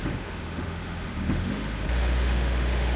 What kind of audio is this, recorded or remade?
remade